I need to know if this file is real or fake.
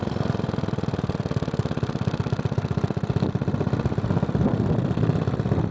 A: real